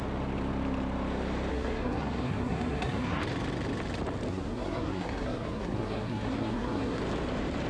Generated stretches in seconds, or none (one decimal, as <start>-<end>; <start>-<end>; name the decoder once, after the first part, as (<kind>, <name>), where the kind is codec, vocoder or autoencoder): 1.5-3.2 (codec, SNAC); 4.3-7.0